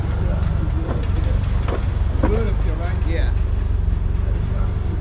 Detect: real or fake real